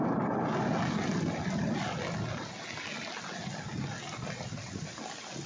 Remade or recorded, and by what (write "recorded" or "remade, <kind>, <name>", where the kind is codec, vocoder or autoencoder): recorded